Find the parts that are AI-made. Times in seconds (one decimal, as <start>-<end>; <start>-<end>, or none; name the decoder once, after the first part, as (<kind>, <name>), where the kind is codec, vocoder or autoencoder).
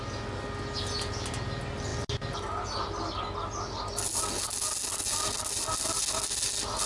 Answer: none